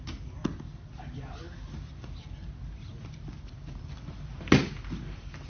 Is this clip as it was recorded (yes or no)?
yes